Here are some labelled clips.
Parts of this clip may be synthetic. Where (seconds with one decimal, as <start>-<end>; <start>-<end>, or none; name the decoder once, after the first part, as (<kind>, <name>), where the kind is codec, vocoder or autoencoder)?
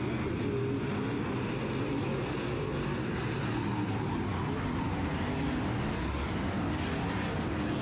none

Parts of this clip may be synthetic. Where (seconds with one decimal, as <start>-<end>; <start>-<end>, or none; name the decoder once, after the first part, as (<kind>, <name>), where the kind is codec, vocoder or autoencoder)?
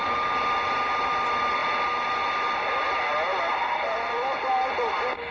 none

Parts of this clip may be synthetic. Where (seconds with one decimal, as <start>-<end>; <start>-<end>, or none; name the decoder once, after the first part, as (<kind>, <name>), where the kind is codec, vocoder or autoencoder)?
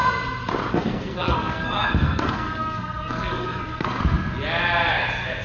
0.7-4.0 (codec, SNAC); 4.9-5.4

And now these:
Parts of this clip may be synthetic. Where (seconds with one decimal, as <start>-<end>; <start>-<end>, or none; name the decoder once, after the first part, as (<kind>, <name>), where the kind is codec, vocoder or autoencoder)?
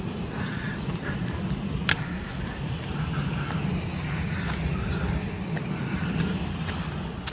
1.9-2.4 (codec, SNAC)